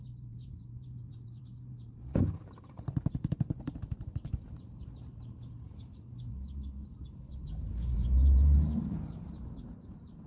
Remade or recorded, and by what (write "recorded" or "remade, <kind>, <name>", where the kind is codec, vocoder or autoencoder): remade, vocoder, BigVGAN v2